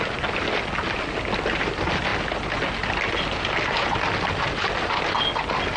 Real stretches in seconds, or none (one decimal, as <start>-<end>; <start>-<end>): 0.0-5.8